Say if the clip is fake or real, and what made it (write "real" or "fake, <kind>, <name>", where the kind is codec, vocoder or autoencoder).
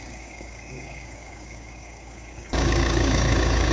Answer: fake, codec, DAC